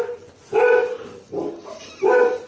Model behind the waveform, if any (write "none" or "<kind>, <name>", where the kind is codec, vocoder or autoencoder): none